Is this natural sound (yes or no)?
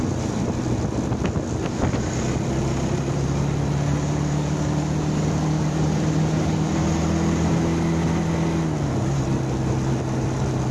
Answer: yes